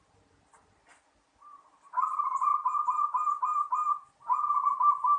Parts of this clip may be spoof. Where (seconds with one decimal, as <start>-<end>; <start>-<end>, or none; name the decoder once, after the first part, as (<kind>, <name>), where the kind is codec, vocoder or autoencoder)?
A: none